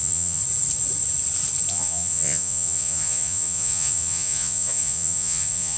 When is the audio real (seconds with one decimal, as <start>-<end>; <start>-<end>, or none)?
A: 0.4-1.7